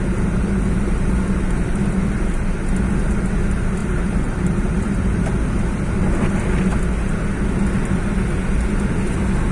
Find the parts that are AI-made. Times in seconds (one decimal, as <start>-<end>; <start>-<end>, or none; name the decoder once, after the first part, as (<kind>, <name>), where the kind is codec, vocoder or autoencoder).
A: 3.8-5.3 (vocoder, BigVGAN v2)